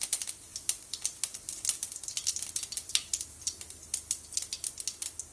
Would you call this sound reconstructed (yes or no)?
no